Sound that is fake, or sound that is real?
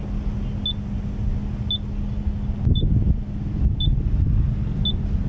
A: real